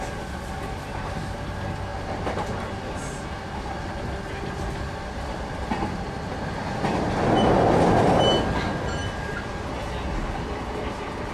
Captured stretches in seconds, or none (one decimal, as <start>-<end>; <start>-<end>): 0.0-11.3